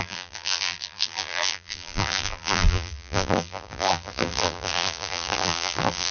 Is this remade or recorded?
remade